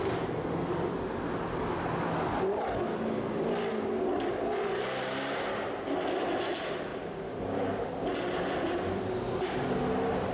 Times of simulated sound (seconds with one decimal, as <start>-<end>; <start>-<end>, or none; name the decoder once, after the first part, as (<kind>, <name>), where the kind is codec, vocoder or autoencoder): none